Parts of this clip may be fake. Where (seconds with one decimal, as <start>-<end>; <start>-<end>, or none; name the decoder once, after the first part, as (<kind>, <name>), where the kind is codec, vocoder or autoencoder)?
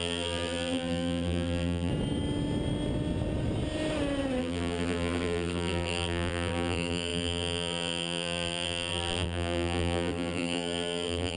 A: 0.0-1.9 (vocoder, BigVGAN v2); 4.4-11.4